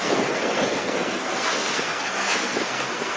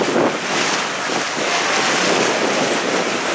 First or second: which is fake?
first